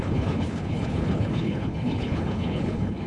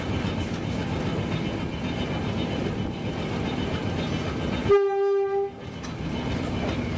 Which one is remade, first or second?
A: first